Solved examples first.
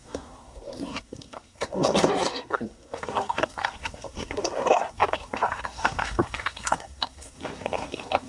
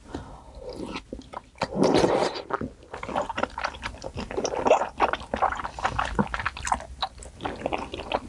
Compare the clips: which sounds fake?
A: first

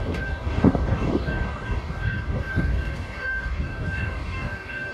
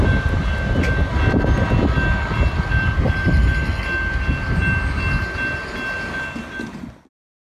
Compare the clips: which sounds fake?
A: first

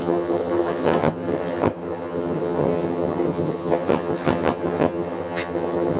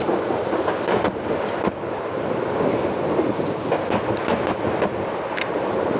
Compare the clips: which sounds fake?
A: first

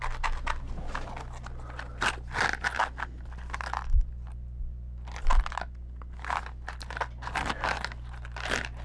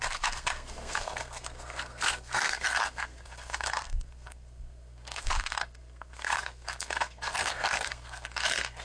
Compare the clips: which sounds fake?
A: second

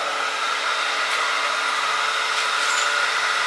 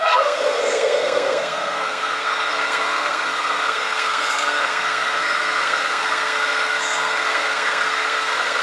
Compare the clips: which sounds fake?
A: second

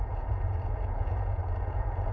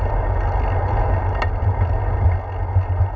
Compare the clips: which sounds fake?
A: first